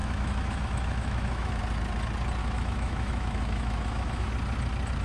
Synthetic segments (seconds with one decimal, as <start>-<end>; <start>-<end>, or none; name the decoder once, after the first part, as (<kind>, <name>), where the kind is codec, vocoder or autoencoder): 0.0-1.6 (autoencoder, DAC-VAE); 2.4-4.3